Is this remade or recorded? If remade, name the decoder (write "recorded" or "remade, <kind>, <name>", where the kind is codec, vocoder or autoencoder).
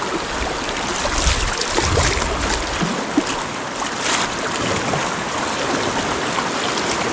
recorded